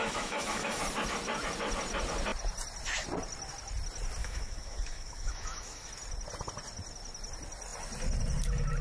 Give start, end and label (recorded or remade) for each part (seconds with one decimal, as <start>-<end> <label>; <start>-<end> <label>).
0.0-0.8 remade; 0.8-4.2 recorded; 4.2-5.9 remade; 5.9-8.8 recorded